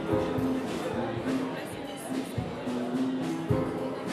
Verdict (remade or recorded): recorded